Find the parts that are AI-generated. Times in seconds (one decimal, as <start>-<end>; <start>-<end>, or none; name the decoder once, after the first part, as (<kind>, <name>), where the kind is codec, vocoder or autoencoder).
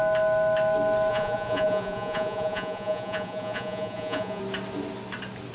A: 1.1-4.4 (vocoder, Vocos)